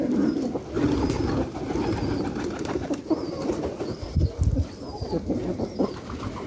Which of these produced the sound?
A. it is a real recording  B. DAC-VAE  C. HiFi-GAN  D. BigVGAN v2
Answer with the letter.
A